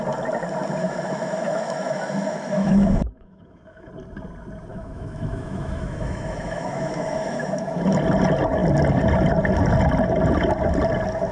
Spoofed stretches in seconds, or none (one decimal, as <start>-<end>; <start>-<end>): 0.8-3.9; 4.7-7.8